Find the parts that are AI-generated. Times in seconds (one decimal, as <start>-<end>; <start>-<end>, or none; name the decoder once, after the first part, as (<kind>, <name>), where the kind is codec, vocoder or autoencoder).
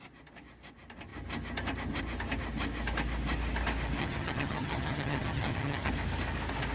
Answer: 4.0-5.9 (vocoder, HiFi-GAN)